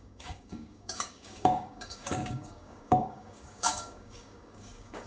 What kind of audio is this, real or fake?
fake